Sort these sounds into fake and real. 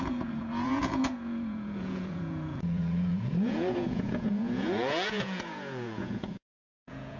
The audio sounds fake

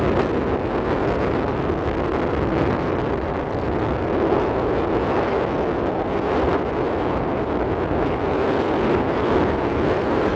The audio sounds real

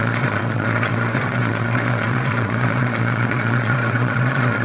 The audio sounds fake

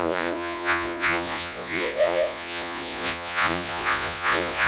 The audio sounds fake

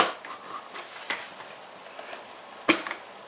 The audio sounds real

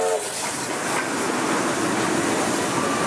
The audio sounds real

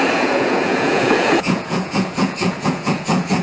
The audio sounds fake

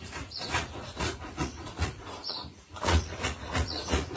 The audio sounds fake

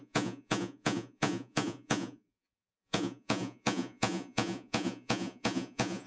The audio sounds fake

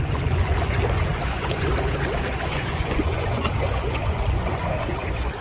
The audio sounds fake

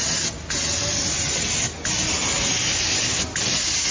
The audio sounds real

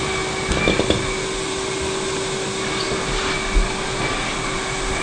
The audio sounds real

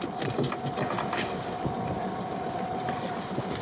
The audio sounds real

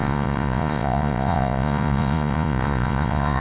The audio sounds fake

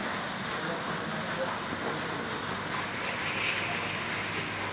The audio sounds real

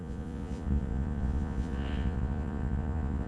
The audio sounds fake